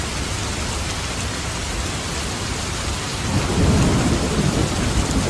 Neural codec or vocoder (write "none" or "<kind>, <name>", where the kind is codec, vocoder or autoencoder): none